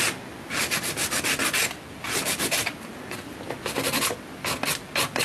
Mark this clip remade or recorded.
recorded